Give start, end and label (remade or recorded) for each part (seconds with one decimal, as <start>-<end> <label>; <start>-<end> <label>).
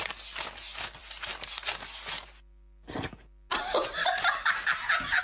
0.0-5.2 recorded